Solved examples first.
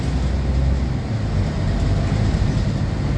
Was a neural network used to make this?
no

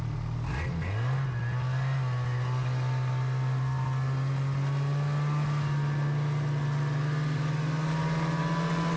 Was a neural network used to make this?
no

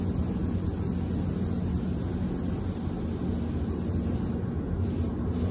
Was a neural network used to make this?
no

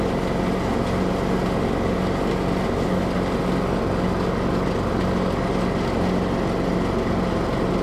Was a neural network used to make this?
no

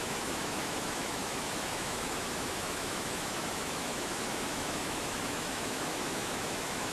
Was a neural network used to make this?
yes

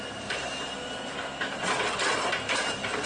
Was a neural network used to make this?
no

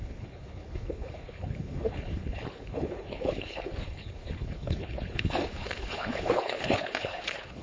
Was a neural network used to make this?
yes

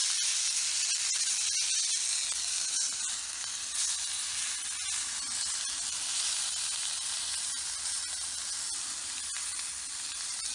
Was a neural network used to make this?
no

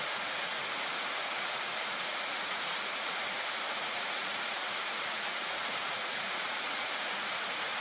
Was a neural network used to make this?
yes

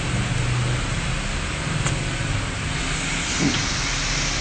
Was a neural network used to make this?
no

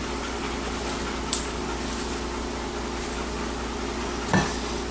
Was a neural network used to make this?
no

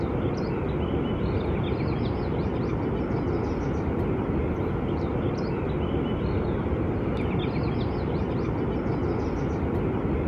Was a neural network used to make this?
no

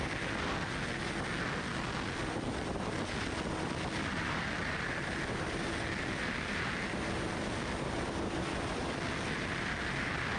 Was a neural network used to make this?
no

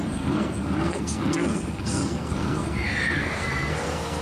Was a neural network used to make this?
yes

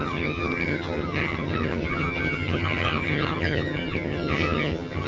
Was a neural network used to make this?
yes